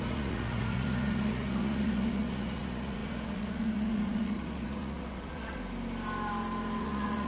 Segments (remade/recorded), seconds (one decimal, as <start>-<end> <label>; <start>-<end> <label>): 0.0-5.6 remade; 5.6-6.8 recorded; 6.8-7.3 remade